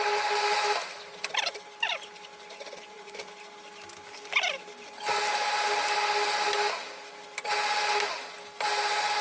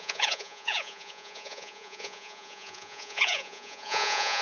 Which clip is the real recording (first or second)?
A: first